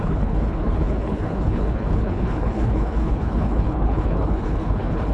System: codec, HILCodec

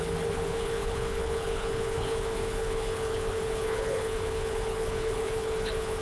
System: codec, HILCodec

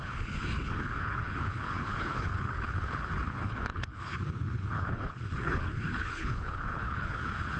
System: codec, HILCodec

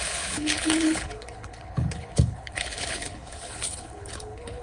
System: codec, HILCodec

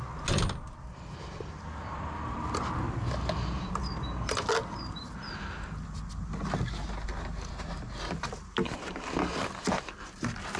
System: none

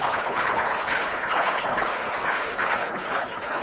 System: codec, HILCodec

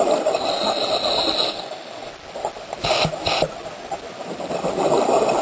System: none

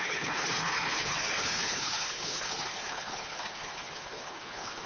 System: codec, HILCodec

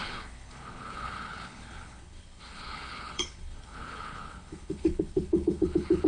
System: codec, HILCodec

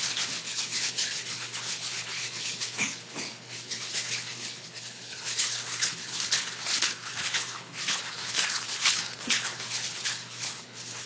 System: codec, HILCodec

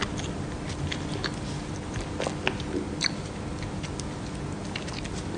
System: none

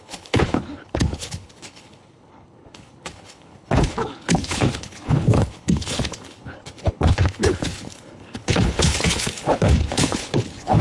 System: codec, HILCodec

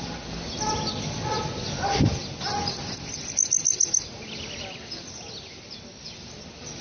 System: none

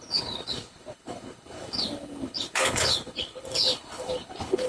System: codec, HILCodec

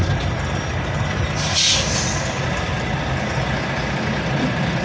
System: none